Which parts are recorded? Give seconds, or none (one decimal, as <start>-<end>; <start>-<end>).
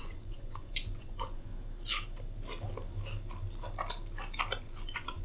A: 1.5-4.6